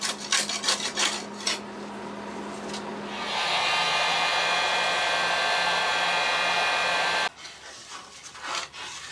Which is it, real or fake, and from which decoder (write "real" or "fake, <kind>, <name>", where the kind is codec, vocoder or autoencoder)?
real